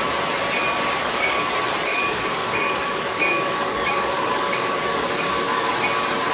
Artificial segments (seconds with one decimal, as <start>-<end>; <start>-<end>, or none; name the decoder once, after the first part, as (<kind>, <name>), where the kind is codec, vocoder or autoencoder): 1.0-1.5 (codec, DAC); 1.9-5.7